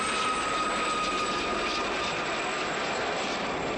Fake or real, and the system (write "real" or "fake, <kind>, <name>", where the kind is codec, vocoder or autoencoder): real